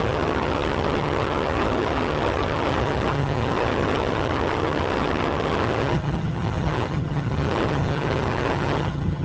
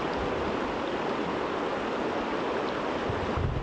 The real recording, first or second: second